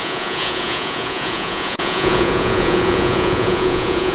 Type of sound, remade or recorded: remade